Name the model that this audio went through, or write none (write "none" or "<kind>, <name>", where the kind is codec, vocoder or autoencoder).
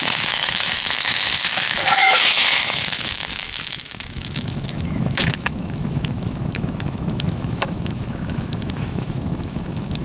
autoencoder, DAC-VAE